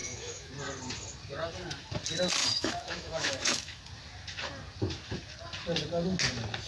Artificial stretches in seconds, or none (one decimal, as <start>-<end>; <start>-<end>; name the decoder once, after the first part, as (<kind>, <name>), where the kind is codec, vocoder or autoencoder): 0.0-0.5 (autoencoder, DAC-VAE); 2.4-3.8